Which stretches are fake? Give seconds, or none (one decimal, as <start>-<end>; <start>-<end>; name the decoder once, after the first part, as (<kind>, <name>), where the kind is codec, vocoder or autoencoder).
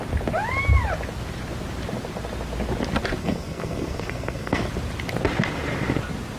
3.2-4.7 (codec, SNAC)